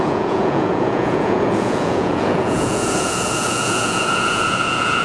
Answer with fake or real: fake